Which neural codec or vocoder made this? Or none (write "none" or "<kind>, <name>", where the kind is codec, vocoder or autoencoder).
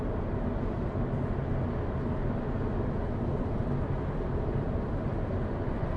none